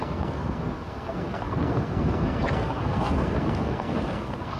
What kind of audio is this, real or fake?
fake